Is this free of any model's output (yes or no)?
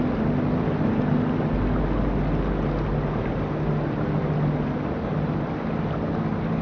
yes